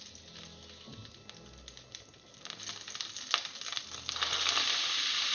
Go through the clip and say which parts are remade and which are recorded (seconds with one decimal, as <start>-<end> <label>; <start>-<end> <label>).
0.0-5.3 recorded

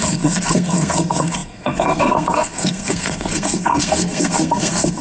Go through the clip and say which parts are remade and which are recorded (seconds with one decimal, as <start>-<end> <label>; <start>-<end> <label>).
0.0-5.0 remade

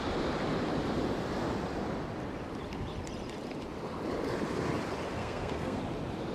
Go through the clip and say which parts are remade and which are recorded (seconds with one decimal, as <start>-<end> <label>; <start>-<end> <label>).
0.0-5.2 recorded; 5.2-5.8 remade; 5.8-6.3 recorded

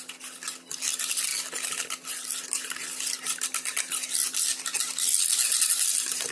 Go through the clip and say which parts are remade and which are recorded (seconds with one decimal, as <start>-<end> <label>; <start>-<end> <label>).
0.0-6.3 recorded

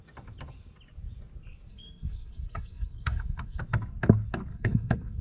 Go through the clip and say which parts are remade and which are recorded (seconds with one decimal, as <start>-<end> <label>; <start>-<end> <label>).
0.0-1.7 recorded; 1.7-3.6 remade; 3.6-4.5 recorded; 4.5-5.2 remade

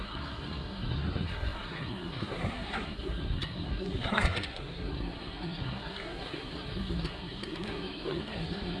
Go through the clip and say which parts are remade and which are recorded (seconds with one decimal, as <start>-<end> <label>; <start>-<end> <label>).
0.0-8.8 remade

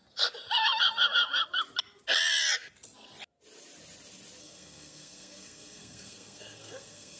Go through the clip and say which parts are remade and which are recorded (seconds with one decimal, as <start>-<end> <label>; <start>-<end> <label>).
0.0-4.4 recorded; 4.4-7.2 remade

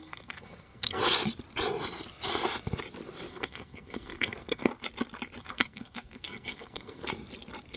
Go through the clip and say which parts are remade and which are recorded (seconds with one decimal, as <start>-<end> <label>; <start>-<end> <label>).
0.0-1.0 remade; 1.0-3.3 recorded; 3.3-4.7 remade; 4.7-5.4 recorded; 5.4-7.0 remade; 7.0-7.8 recorded